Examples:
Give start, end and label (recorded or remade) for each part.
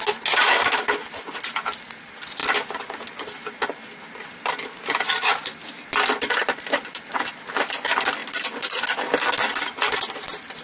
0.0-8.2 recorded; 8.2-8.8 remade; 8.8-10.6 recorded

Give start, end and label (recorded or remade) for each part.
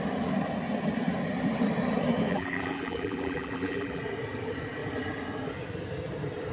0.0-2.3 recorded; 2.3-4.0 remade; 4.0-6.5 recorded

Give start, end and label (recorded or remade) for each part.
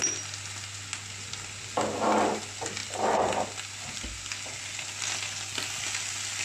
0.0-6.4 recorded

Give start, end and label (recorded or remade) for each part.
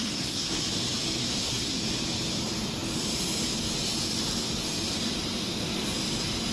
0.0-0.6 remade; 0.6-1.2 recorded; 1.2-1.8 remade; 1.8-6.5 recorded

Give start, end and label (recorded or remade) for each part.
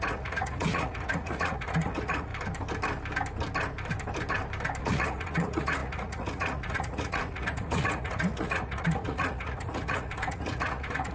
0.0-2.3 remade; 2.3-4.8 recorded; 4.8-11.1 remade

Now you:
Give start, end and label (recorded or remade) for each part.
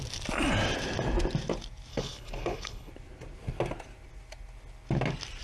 0.0-1.9 recorded; 1.9-2.9 remade; 2.9-5.4 recorded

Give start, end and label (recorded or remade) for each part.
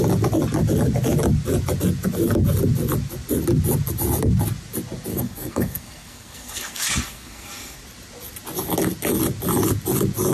0.0-5.1 recorded; 5.1-7.8 remade; 7.8-10.3 recorded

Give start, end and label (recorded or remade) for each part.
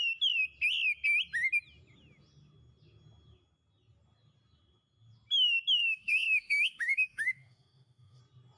0.0-5.8 recorded; 5.8-8.2 remade; 8.2-8.6 recorded